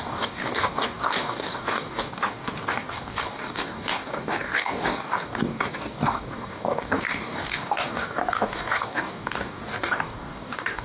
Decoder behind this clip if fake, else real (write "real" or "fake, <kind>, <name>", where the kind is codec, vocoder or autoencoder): fake, codec, DAC